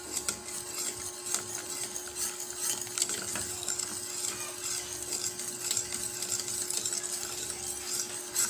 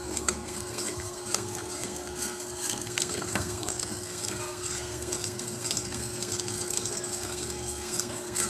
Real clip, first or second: first